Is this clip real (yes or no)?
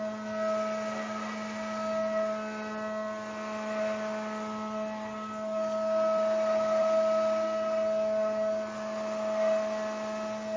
yes